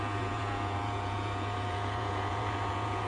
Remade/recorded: remade